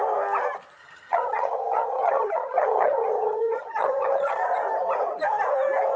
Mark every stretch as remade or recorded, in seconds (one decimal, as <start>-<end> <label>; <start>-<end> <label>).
0.0-0.8 recorded; 0.8-4.4 remade; 4.4-6.0 recorded